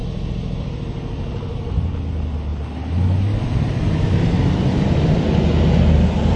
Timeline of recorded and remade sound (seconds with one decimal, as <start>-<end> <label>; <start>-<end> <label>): 0.0-6.4 recorded